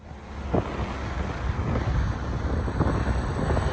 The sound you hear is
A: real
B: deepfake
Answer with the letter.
A